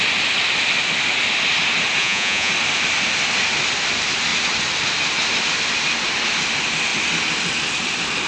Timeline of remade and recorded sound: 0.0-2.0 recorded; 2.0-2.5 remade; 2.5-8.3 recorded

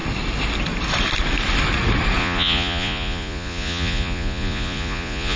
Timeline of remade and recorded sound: 0.0-2.2 recorded; 2.2-5.4 remade

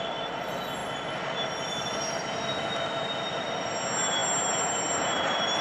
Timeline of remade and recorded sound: 0.0-5.6 recorded

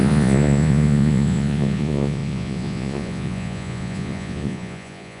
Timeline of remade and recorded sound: 0.0-5.2 remade

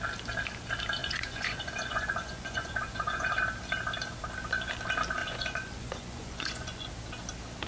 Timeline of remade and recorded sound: 0.0-1.0 recorded; 1.0-3.3 remade; 3.3-5.2 recorded; 5.2-6.9 remade; 6.9-7.7 recorded